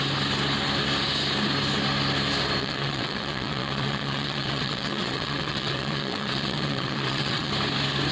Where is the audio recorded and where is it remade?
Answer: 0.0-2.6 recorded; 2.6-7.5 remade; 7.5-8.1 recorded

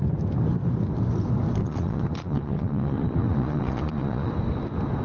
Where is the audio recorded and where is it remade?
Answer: 0.0-1.6 recorded; 1.6-4.3 remade; 4.3-5.0 recorded

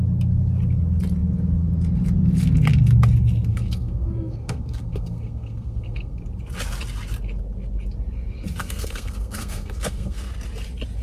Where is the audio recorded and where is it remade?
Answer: 0.0-3.5 recorded; 3.5-6.2 remade; 6.2-8.6 recorded; 8.6-10.3 remade; 10.3-11.0 recorded

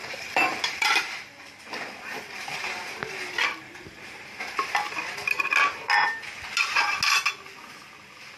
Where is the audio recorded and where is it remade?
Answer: 0.0-1.6 remade; 1.6-8.4 recorded

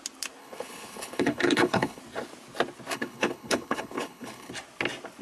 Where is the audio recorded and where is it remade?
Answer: 0.0-0.4 recorded; 0.4-2.0 remade; 2.0-2.9 recorded; 2.9-4.5 remade; 4.5-5.2 recorded

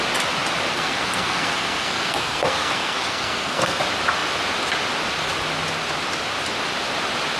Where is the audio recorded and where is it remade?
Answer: 0.0-0.7 recorded; 0.7-3.8 remade; 3.8-7.4 recorded

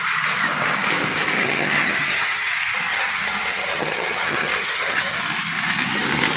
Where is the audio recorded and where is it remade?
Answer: 0.0-1.4 recorded; 1.4-2.5 remade; 2.5-2.9 recorded; 2.9-5.2 remade; 5.2-6.4 recorded